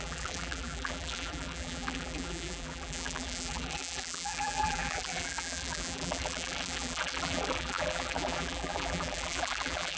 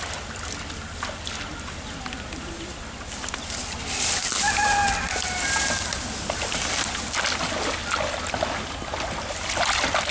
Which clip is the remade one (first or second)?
first